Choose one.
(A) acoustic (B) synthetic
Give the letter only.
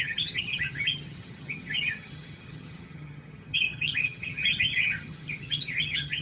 B